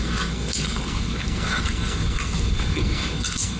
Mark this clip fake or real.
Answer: fake